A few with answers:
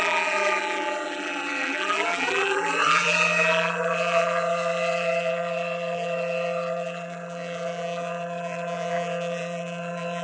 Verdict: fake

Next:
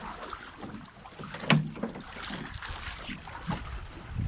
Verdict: real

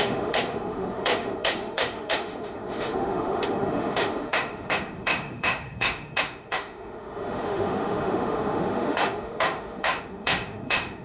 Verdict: fake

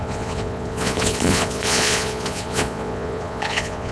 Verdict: fake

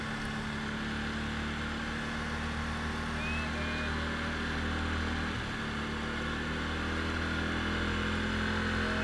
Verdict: real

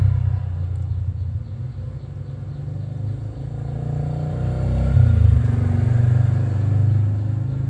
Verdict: real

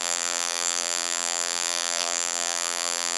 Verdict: fake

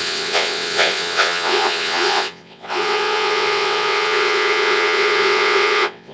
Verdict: fake